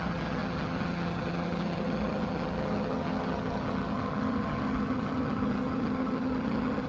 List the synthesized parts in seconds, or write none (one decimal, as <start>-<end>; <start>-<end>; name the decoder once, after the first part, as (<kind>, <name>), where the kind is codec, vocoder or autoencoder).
0.0-6.9 (vocoder, HiFi-GAN)